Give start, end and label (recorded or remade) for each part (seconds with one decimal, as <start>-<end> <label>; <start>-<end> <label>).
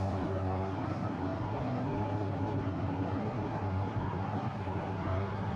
0.0-5.6 remade